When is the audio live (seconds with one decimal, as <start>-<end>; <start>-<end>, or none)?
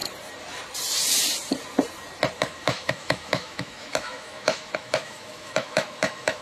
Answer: 0.0-2.4